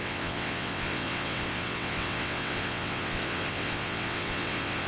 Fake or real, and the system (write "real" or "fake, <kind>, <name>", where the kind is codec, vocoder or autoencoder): fake, vocoder, WaveNeXt